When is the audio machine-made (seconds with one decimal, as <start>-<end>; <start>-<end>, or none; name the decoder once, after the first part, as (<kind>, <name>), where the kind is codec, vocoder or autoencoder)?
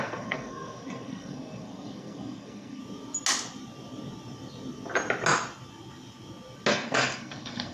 0.0-2.8 (codec, SNAC); 6.7-7.7